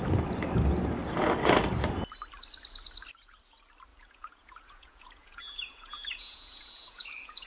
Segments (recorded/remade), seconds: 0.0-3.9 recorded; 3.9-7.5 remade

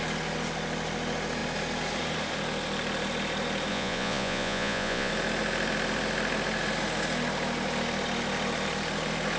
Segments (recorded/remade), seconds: 0.0-3.7 recorded; 3.7-5.1 remade; 5.1-9.4 recorded

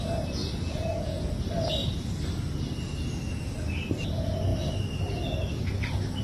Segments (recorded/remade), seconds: 0.0-0.4 recorded; 0.4-1.3 remade; 1.3-6.2 recorded

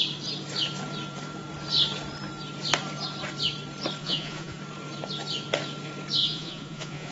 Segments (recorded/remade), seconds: 0.0-4.0 recorded; 4.0-4.6 remade; 4.6-6.2 recorded; 6.2-7.1 remade